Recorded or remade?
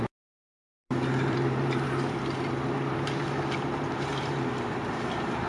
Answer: remade